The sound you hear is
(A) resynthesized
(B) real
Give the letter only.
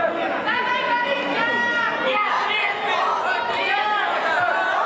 B